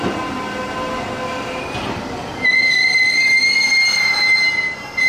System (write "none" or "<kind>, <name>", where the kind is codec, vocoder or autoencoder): none